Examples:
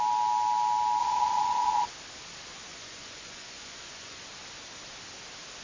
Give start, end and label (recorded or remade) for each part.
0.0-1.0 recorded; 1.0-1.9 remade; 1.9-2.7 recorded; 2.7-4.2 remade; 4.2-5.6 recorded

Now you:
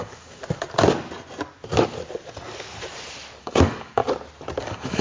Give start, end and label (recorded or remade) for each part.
0.0-0.4 remade; 0.4-3.4 recorded; 3.4-4.0 remade; 4.0-4.6 recorded; 4.6-5.0 remade